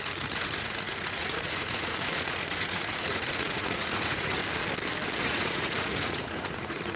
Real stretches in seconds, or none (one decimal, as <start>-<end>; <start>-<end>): 4.4-5.2